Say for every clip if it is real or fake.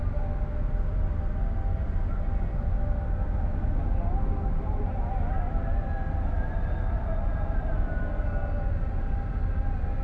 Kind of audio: real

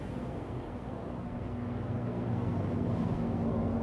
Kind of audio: fake